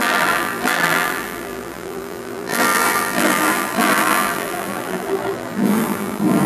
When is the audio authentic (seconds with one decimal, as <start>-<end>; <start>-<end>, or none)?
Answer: none